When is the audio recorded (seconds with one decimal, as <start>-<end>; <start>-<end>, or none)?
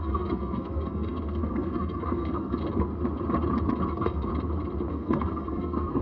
2.6-3.9; 4.3-4.9